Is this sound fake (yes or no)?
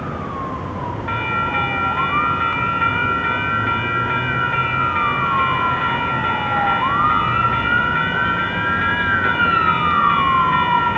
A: no